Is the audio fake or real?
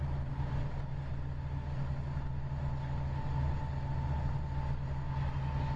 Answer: real